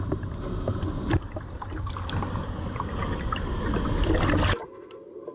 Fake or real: real